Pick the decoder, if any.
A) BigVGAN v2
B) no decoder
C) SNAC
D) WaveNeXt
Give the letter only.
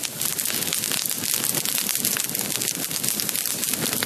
B